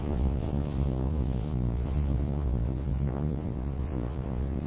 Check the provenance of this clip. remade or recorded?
remade